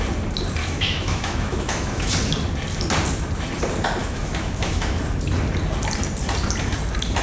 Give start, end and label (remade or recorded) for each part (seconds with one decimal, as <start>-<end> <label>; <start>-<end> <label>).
0.0-0.6 recorded; 0.6-2.1 remade; 2.1-4.0 recorded; 4.0-5.0 remade; 5.0-7.2 recorded